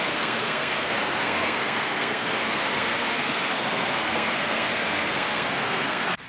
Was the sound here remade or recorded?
remade